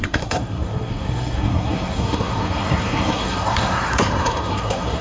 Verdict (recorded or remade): remade